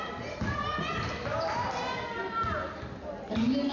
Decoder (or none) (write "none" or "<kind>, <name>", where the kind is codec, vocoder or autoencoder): none